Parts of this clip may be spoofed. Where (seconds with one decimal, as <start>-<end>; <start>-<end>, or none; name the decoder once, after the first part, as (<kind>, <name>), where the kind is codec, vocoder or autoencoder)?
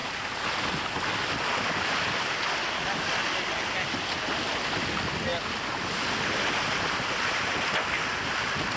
none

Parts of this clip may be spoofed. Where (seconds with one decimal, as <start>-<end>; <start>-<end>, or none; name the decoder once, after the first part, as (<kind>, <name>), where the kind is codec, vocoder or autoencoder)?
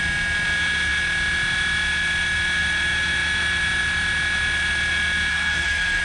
5.3-6.0 (codec, SNAC)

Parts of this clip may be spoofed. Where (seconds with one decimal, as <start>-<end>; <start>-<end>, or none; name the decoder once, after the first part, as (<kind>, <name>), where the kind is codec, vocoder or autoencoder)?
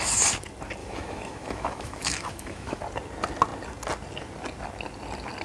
0.8-2.8 (autoencoder, DAC-VAE)